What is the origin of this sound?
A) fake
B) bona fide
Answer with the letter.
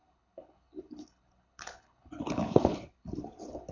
A